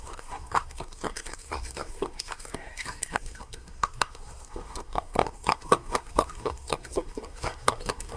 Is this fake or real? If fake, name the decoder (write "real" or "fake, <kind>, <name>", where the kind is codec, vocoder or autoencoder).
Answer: fake, codec, SNAC